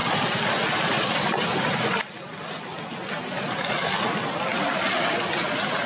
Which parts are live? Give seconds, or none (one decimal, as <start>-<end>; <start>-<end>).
0.0-5.9